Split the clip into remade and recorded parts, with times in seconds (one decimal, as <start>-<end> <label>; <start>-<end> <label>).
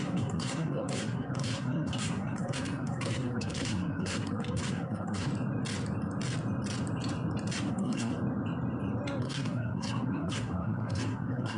0.0-5.3 remade; 5.3-7.7 recorded; 7.7-8.1 remade; 8.1-9.2 recorded; 9.2-11.6 remade